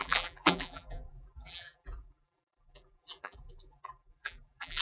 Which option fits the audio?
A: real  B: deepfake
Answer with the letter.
B